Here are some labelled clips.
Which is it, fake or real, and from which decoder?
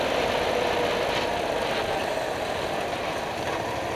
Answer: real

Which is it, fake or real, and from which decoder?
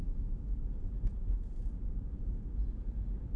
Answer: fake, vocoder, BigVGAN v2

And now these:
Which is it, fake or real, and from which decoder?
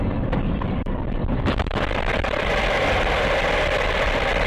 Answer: fake, vocoder, BigVGAN v2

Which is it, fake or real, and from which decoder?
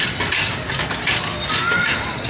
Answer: real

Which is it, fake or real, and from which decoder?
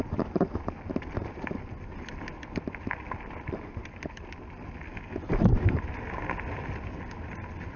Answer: real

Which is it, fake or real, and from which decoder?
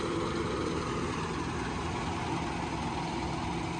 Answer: real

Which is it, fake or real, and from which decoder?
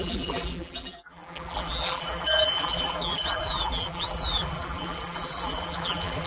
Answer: fake, vocoder, BigVGAN v2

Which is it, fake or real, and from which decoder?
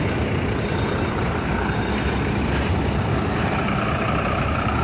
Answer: fake, vocoder, BigVGAN v2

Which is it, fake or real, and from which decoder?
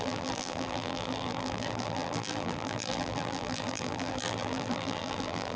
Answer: fake, vocoder, BigVGAN v2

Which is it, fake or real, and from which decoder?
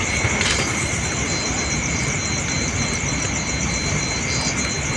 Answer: real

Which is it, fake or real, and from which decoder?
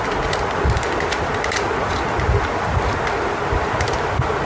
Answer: real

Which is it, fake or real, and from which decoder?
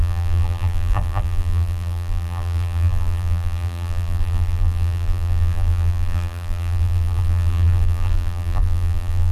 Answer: fake, vocoder, BigVGAN v2